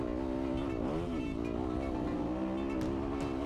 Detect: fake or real real